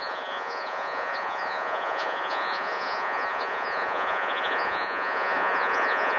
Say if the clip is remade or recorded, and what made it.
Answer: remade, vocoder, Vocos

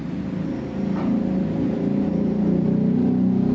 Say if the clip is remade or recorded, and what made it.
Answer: recorded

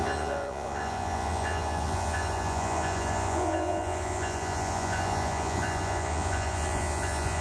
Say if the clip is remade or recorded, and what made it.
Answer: remade, vocoder, Vocos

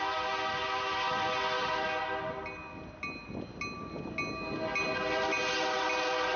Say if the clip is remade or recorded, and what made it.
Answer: recorded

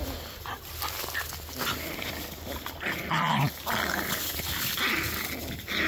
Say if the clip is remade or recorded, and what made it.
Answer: recorded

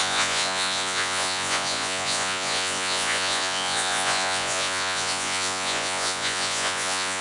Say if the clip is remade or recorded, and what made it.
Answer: remade, vocoder, Vocos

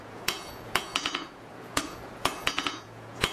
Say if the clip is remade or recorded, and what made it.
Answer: remade, vocoder, Vocos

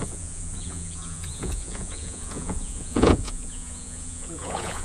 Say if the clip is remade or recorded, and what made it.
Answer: remade, vocoder, Vocos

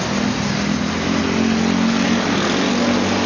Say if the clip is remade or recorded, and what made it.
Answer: recorded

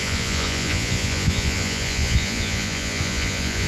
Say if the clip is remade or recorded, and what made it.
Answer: remade, vocoder, Vocos